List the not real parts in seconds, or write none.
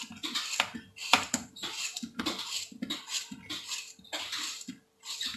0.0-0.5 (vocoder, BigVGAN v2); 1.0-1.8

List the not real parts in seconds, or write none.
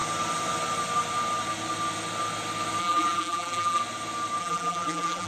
2.8-3.8 (vocoder, BigVGAN v2); 4.4-5.3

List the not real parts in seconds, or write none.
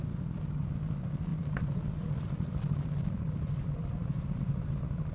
1.3-4.4 (vocoder, BigVGAN v2)